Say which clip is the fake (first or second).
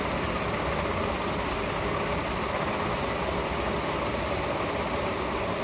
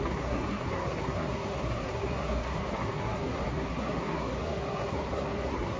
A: second